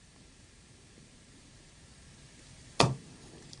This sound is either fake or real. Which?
fake